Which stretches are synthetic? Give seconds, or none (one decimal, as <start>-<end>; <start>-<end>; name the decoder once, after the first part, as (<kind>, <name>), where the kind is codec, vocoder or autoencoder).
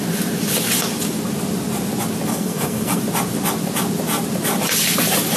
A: 2.3-3.0 (codec, SNAC)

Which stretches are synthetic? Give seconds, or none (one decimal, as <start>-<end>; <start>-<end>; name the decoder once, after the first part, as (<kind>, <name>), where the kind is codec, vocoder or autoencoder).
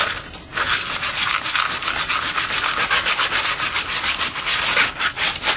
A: none